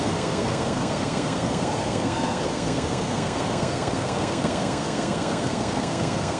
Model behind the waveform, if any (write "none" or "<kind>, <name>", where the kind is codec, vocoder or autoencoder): codec, SNAC